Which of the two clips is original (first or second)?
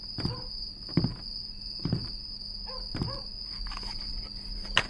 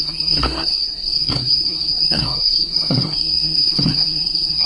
first